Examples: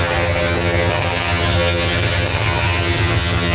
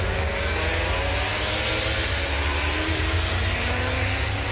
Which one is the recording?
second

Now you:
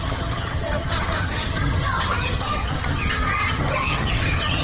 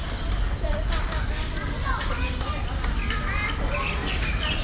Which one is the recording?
second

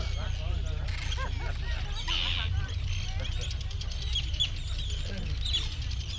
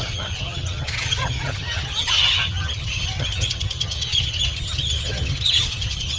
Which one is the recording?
first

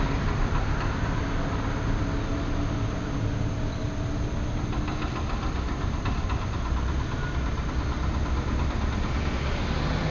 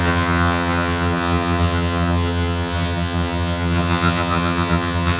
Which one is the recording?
first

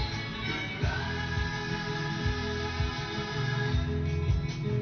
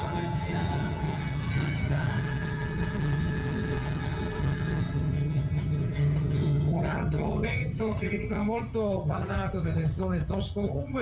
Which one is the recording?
first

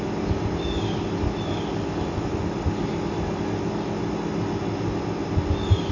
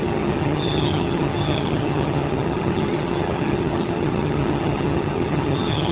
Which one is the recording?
first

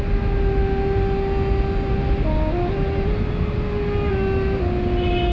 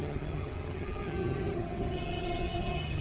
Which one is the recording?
first